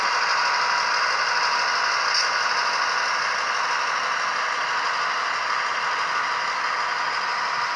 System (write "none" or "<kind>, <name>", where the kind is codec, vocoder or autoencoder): none